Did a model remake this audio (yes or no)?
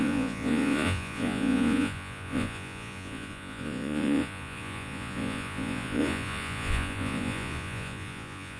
yes